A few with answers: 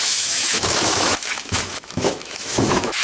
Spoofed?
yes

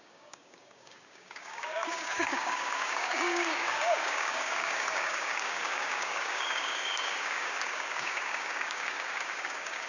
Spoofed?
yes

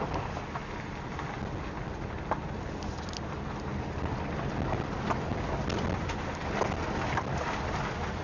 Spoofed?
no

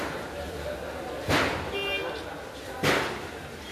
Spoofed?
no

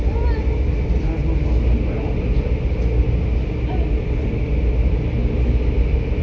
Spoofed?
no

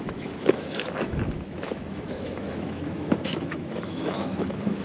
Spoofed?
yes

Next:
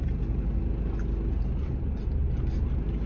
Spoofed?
no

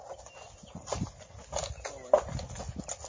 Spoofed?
no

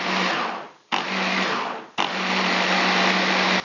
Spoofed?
no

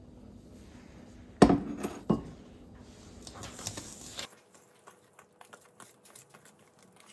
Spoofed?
no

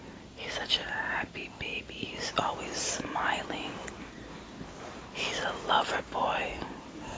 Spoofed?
yes